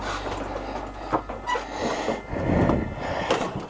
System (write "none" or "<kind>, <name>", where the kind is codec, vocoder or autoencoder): none